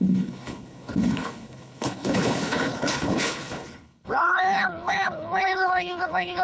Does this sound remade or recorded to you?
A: remade